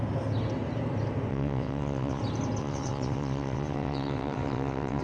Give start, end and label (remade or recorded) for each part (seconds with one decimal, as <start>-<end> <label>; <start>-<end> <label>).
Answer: 0.0-1.3 recorded; 1.3-2.2 remade; 2.2-2.6 recorded; 2.6-5.0 remade